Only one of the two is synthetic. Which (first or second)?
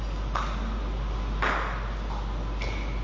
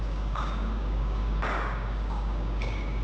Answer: second